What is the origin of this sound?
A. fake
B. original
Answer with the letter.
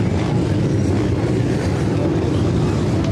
B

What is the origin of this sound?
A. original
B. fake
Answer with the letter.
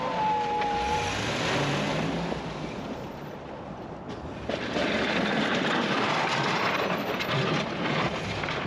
A